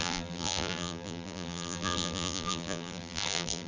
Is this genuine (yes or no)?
no